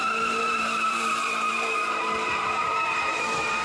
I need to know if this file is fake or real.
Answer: fake